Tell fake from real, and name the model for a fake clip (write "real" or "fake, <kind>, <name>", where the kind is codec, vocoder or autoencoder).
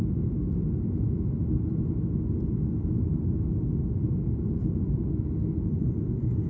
real